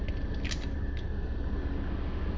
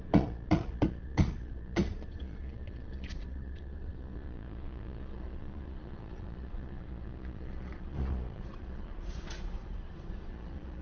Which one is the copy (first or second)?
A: second